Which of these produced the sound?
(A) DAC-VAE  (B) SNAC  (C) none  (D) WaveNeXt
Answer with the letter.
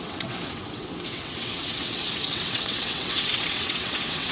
D